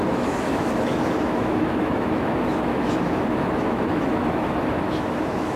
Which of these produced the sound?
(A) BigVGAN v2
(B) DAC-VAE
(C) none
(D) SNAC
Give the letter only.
B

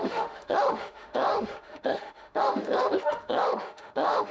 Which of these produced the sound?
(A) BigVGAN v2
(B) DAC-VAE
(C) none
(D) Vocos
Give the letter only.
B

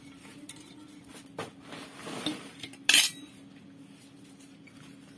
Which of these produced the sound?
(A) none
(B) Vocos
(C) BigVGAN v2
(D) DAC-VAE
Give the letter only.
A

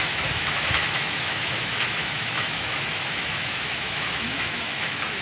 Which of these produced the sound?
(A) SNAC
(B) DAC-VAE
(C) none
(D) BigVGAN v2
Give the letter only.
B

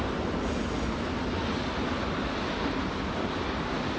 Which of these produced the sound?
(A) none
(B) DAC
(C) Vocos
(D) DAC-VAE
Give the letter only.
A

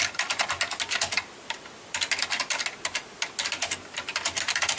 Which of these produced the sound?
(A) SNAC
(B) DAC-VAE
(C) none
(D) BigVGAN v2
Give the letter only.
C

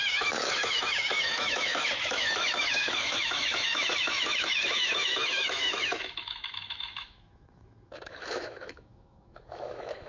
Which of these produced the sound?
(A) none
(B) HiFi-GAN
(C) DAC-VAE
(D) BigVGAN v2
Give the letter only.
C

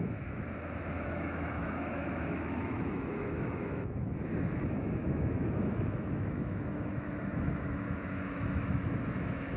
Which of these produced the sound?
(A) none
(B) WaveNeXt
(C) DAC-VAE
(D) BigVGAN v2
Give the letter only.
C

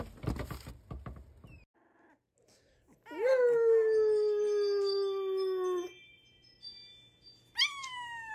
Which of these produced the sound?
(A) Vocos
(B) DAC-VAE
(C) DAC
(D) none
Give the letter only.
D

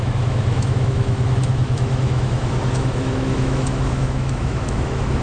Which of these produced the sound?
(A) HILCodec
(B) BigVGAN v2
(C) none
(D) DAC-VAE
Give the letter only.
D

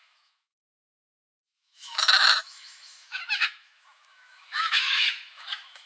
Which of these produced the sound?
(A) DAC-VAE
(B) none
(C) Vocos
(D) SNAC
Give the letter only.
A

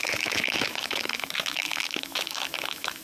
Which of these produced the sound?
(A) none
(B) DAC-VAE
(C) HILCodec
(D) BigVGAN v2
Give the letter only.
B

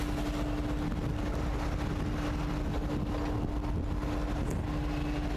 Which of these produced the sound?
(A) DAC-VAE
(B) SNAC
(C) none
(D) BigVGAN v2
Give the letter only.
C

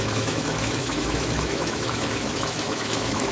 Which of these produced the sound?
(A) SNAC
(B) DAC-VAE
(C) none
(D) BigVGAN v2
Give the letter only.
B